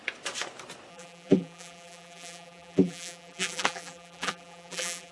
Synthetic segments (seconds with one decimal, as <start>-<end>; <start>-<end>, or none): 0.9-5.1